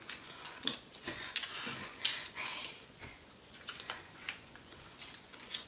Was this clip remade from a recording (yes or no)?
yes